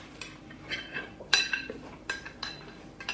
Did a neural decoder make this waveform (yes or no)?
yes